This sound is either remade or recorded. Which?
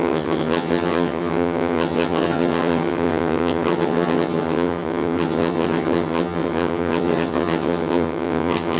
remade